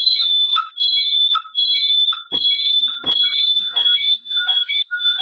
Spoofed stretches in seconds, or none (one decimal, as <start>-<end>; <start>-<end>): 0.0-0.5; 3.6-5.2